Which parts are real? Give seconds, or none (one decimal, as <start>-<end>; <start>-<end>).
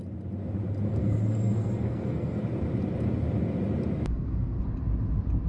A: 0.0-0.9; 2.4-4.1; 4.6-5.5